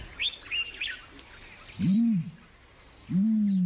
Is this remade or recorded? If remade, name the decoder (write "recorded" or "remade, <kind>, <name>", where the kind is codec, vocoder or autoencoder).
recorded